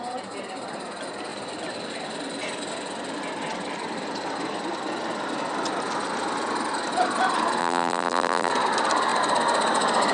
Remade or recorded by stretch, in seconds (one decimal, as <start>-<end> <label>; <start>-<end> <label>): 0.0-7.6 recorded; 7.6-8.5 remade; 8.5-10.1 recorded